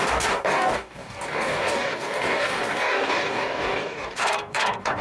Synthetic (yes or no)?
yes